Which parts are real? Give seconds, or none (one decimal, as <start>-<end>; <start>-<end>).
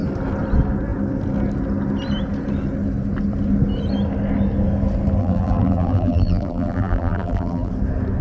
0.0-5.2; 7.7-8.2